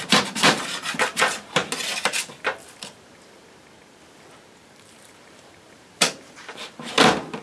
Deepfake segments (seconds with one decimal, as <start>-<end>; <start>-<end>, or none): 0.0-1.6; 4.4-7.4